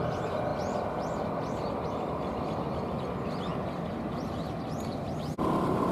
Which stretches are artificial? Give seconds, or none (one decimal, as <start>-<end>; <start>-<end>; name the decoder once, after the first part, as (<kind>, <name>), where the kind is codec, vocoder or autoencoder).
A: 0.5-3.1 (vocoder, BigVGAN v2); 3.5-4.8